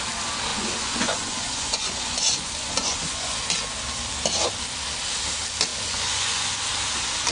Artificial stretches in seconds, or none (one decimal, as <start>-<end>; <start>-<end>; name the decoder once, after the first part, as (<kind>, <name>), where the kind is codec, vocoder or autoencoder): 0.5-3.4 (vocoder, Vocos); 5.7-6.6